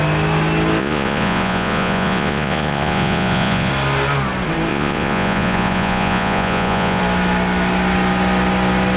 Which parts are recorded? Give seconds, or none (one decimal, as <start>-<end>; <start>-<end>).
0.0-0.8; 3.7-4.7; 7.0-9.0